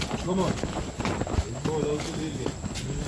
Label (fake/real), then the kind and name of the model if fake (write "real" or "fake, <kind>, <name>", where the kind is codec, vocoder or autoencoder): real